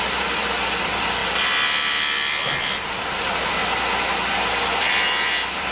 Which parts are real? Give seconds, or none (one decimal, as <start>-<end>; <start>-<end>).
3.6-4.8